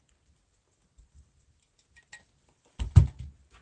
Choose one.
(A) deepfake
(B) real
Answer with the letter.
B